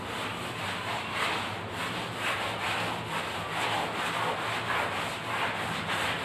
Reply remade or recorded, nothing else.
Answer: recorded